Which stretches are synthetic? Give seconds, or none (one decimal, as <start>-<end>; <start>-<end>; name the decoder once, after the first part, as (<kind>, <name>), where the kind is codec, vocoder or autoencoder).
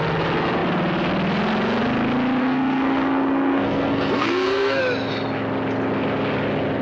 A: 2.4-4.8 (codec, SNAC)